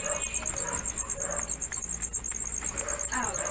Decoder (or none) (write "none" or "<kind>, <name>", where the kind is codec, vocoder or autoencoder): none